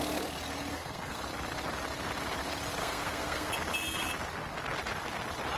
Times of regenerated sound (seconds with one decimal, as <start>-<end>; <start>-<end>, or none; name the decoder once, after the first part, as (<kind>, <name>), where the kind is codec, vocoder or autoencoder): 0.7-1.2 (codec, SNAC); 2.8-3.5